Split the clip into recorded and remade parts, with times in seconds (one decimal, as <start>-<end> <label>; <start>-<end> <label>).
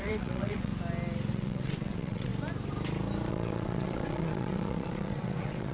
0.0-0.7 remade; 0.7-1.3 recorded; 1.3-2.3 remade; 2.3-3.3 recorded; 3.3-5.7 remade